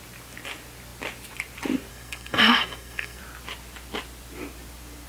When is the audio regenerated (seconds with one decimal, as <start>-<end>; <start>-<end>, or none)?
1.9-3.2